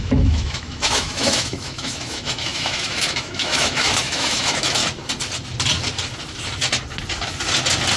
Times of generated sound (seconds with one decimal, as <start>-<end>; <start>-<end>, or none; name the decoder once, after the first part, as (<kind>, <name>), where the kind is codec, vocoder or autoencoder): 0.0-4.8 (autoencoder, DAC-VAE)